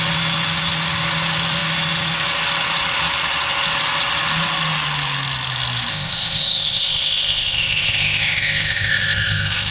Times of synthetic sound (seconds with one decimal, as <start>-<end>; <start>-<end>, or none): 5.9-9.7